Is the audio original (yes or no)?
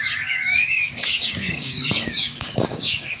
no